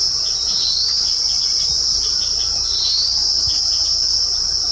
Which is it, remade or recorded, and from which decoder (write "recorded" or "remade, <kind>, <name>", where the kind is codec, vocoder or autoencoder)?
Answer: recorded